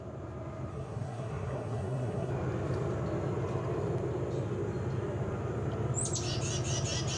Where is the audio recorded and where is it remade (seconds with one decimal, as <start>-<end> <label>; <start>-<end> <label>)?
0.0-0.7 recorded; 0.7-2.3 remade; 2.3-7.2 recorded

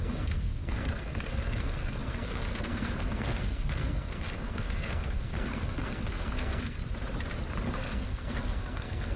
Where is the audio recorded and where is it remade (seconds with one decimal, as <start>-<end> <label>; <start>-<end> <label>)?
0.0-6.8 remade; 6.8-7.7 recorded; 7.7-9.2 remade

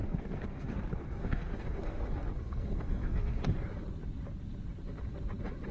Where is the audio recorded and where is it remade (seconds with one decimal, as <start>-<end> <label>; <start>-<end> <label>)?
0.0-3.4 remade; 3.4-5.7 recorded

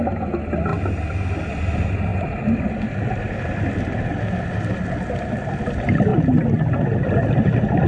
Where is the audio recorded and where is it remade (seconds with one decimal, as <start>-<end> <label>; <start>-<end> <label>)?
0.0-7.9 recorded

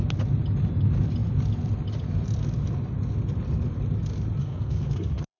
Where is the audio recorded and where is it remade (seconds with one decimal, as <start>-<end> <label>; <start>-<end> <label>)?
0.0-4.4 recorded; 4.4-5.4 remade